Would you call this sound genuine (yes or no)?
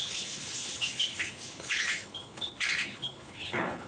no